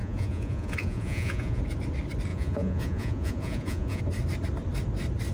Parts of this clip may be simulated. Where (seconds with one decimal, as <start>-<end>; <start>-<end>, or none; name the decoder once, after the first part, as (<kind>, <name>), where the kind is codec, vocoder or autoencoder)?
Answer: 0.0-1.6 (vocoder, Vocos); 2.3-4.0